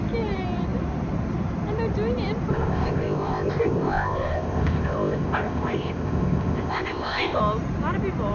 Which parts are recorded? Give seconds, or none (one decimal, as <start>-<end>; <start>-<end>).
0.0-2.5; 7.4-8.3